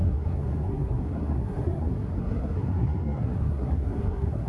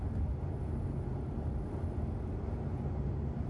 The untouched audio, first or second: second